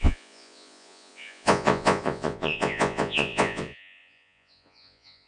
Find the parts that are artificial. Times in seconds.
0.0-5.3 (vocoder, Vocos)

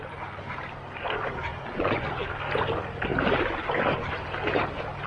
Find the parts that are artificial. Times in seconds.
1.5-2.2 (vocoder, Vocos)

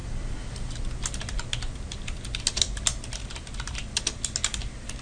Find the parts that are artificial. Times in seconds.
none